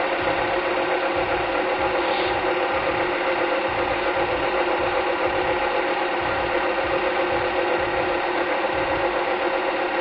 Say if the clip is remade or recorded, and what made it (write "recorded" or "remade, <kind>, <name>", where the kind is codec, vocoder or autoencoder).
recorded